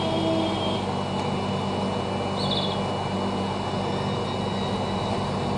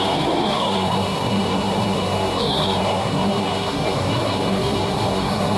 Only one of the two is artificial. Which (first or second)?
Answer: second